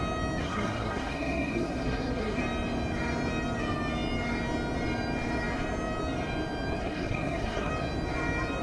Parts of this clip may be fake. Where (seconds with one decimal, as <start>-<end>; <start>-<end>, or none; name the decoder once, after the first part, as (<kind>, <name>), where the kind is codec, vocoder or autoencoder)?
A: 0.4-2.4 (codec, SNAC); 6.8-7.7